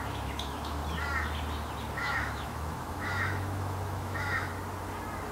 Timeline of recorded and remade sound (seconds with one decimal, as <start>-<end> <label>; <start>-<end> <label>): 0.0-0.8 remade; 0.8-1.9 recorded; 1.9-4.5 remade; 4.5-5.3 recorded

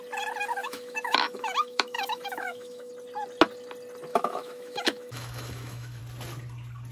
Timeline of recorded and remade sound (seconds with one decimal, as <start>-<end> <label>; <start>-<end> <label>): 0.0-0.6 recorded; 0.6-2.9 remade; 2.9-4.1 recorded; 4.1-6.0 remade; 6.0-6.9 recorded